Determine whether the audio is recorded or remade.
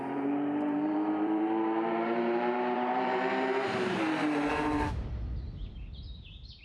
remade